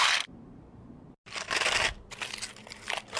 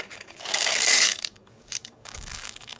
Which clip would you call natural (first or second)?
first